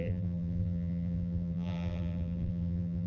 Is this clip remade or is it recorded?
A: remade